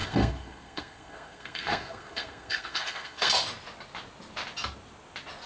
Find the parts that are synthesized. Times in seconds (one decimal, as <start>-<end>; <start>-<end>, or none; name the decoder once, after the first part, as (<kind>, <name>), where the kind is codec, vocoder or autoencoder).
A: 0.0-3.3 (codec, SNAC)